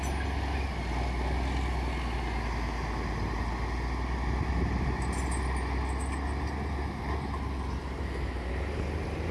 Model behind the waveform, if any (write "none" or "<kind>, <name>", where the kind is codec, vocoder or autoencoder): none